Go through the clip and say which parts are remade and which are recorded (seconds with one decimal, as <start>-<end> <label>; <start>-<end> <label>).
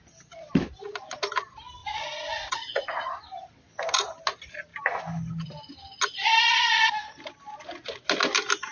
0.0-1.8 recorded; 1.8-3.1 remade; 3.1-8.7 recorded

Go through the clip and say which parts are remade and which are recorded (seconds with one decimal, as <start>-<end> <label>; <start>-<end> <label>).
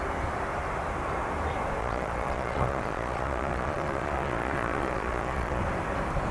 0.0-1.8 recorded; 1.8-5.6 remade; 5.6-6.3 recorded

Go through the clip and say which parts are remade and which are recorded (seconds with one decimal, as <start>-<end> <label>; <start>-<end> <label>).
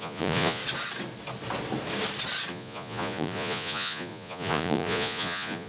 0.0-0.6 remade; 0.6-2.5 recorded; 2.5-5.7 remade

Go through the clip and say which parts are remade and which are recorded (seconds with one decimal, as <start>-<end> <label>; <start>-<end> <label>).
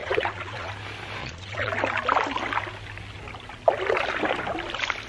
0.0-0.7 remade; 0.7-1.2 recorded; 1.2-1.7 remade; 1.7-5.1 recorded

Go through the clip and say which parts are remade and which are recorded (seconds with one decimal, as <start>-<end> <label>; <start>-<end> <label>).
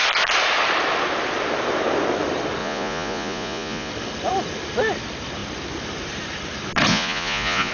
0.0-2.6 recorded; 2.6-3.9 remade; 3.9-6.9 recorded; 6.9-7.7 remade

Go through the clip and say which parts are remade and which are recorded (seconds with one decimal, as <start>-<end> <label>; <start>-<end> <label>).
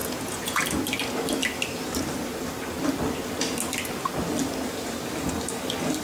0.0-0.6 remade; 0.6-6.0 recorded